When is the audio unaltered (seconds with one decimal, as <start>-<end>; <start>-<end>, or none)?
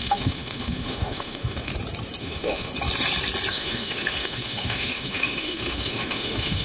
1.7-2.2; 2.7-3.5